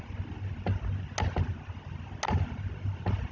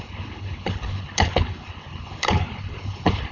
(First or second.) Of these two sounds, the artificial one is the second